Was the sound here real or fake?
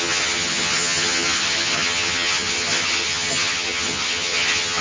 fake